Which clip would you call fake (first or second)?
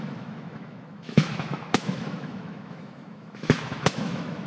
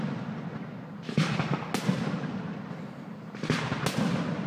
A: first